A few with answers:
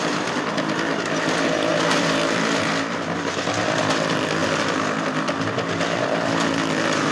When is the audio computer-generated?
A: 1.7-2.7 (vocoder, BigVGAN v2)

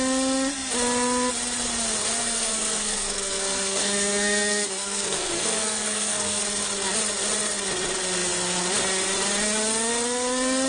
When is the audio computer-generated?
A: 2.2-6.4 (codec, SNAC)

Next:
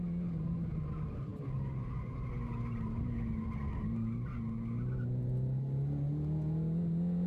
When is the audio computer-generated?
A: none

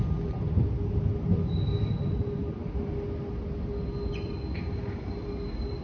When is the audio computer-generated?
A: none

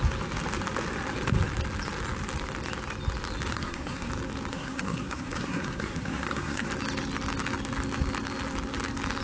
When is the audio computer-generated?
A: 3.5-4.1 (codec, SNAC); 4.5-6.7

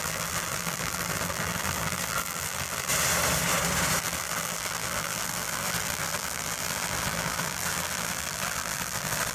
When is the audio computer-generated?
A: 0.0-2.9 (vocoder, BigVGAN v2); 4.0-9.3